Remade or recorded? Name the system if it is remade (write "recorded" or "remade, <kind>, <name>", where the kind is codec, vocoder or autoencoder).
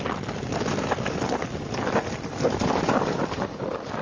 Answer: recorded